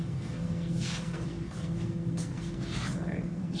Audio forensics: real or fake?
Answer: fake